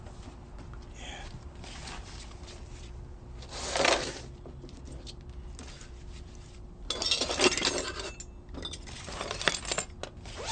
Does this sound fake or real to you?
real